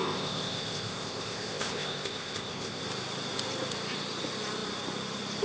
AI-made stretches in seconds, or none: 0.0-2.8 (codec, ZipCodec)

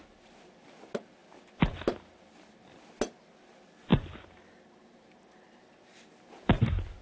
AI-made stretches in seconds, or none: none

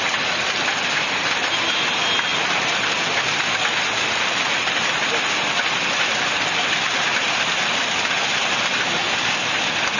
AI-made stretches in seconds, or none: none

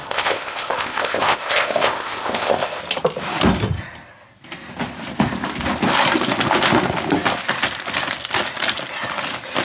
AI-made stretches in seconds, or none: 0.0-2.8 (codec, ZipCodec)